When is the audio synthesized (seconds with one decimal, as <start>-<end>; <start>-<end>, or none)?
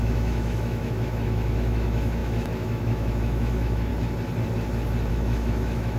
0.0-3.9; 5.1-6.0